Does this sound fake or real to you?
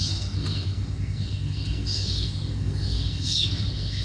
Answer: fake